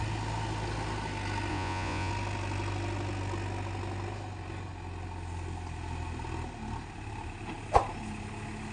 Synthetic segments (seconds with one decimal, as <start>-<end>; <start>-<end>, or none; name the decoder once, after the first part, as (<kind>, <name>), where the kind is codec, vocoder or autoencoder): 1.5-2.1 (vocoder, Vocos)